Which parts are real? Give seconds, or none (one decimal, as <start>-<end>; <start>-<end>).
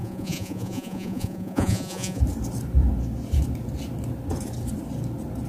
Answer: 2.2-5.5